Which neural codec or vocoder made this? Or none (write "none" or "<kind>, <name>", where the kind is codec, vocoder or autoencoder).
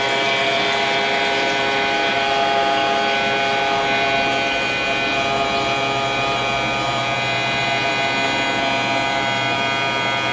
none